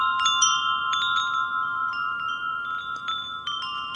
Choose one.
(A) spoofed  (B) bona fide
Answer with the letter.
A